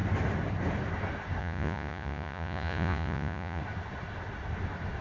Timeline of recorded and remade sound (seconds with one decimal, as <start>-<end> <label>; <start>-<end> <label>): 0.0-1.4 recorded; 1.4-3.6 remade; 3.6-5.0 recorded